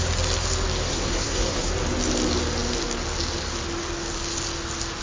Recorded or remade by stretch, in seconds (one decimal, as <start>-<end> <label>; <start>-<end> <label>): 0.0-0.9 recorded; 0.9-1.7 remade; 1.7-5.0 recorded